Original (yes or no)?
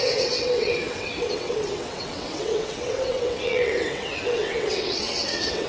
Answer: no